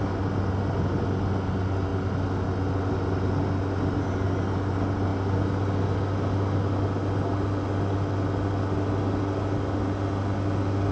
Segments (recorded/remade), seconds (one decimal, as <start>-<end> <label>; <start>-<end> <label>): 0.0-10.9 recorded